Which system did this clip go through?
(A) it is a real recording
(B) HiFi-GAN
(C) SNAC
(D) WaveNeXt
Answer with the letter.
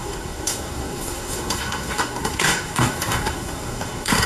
C